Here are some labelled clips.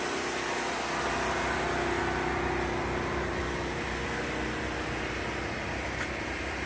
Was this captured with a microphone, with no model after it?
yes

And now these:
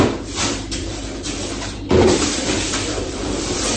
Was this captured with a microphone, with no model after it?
no